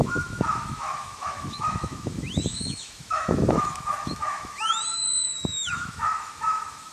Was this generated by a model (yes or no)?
yes